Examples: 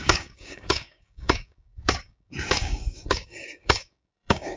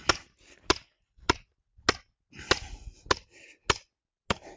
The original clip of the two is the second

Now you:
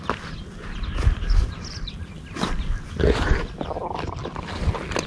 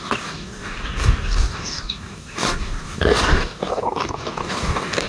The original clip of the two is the first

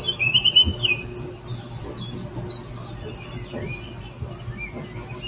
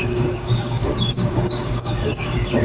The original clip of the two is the first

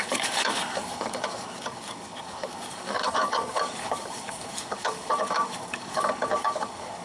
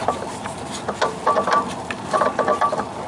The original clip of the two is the second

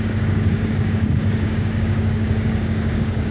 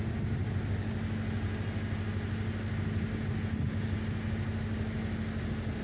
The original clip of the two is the second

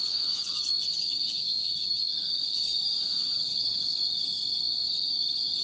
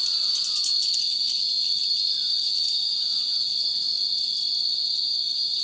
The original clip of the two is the second